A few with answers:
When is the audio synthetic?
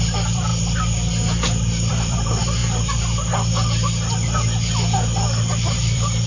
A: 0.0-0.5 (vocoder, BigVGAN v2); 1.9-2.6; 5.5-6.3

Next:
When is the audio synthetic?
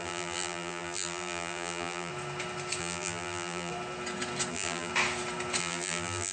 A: 0.0-2.1 (vocoder, BigVGAN v2); 2.8-3.7; 4.5-4.9; 5.6-6.3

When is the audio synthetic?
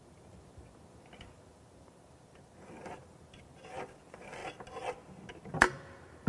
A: 0.0-4.4 (vocoder, BigVGAN v2); 5.5-6.3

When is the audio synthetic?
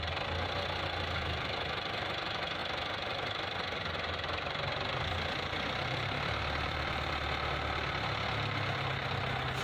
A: 2.6-7.1 (vocoder, BigVGAN v2)